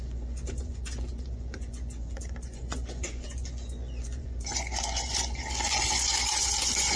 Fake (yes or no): yes